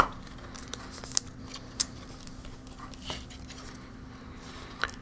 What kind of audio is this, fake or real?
real